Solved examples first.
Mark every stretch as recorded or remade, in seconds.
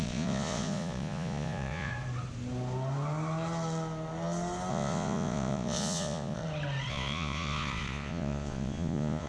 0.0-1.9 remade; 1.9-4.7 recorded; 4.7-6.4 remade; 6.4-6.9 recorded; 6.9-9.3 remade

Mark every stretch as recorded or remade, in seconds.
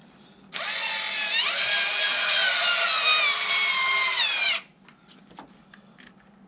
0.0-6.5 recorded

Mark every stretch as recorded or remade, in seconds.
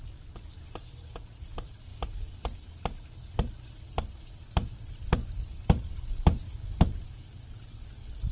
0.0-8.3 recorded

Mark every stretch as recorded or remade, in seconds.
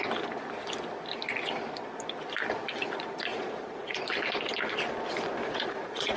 0.0-3.3 recorded; 3.3-4.0 remade; 4.0-5.4 recorded; 5.4-6.2 remade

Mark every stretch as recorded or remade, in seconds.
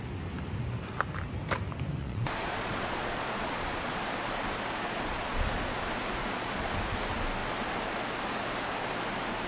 0.0-2.0 recorded; 2.0-4.0 remade; 4.0-4.8 recorded; 4.8-5.8 remade; 5.8-6.2 recorded; 6.2-6.8 remade; 6.8-9.5 recorded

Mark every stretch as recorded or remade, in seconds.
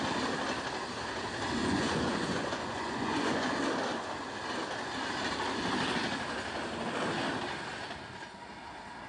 0.0-1.6 recorded; 1.6-3.5 remade; 3.5-9.1 recorded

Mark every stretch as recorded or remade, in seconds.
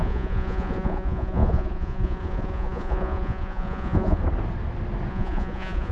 0.0-4.2 remade; 4.2-5.1 recorded; 5.1-5.9 remade